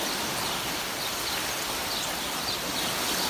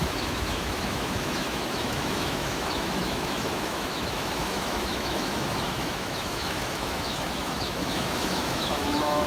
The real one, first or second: first